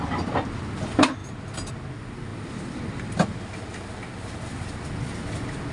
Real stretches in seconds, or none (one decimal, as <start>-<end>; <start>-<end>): 0.0-1.2; 1.7-2.3; 4.7-5.7